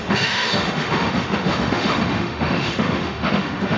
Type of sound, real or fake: fake